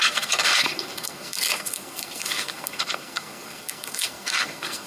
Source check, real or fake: fake